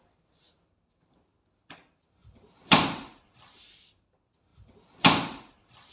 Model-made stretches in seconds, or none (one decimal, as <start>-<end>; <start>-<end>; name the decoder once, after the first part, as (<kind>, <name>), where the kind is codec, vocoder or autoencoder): 2.2-3.3 (vocoder, BigVGAN v2); 4.5-5.9